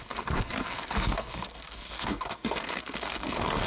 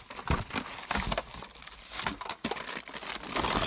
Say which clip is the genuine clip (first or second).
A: second